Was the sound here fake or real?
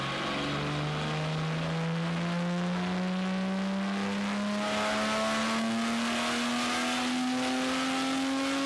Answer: real